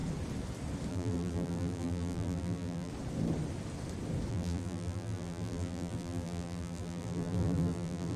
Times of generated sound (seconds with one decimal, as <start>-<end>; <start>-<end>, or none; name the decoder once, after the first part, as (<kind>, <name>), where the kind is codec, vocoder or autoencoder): 0.9-2.9 (vocoder, BigVGAN v2); 4.3-8.2